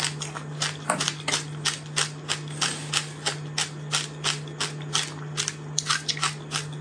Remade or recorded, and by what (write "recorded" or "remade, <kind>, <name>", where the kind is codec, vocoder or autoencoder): recorded